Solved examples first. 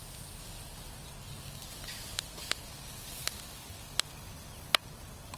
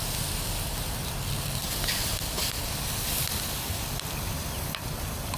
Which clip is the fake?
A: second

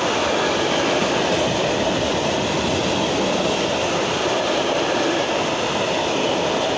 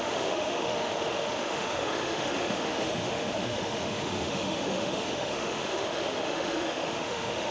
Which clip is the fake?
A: second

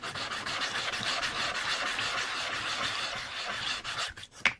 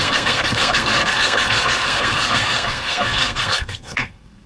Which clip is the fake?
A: second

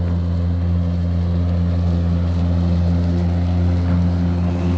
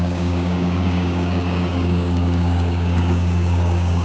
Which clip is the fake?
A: second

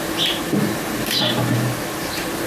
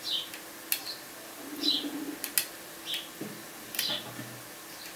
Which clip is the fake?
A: first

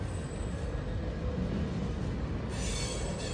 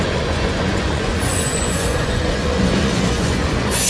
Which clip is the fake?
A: second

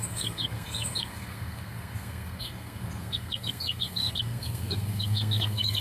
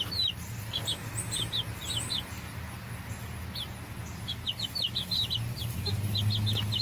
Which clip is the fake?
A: first